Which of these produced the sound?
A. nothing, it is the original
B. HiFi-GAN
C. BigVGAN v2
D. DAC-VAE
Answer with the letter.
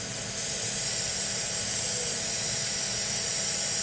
A